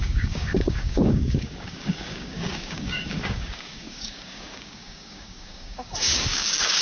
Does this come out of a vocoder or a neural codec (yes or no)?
yes